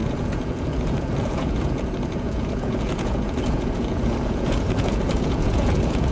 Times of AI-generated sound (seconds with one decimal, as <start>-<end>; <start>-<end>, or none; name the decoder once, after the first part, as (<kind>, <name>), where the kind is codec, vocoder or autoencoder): 0.0-6.1 (vocoder, Vocos)